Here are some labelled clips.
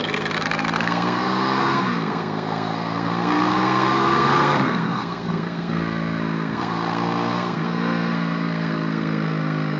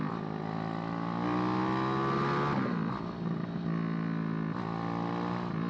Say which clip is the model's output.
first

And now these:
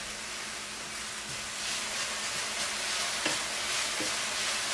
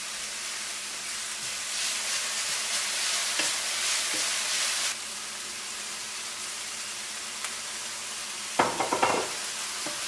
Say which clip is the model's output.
second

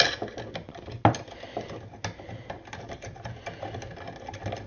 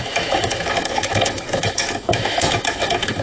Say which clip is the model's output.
second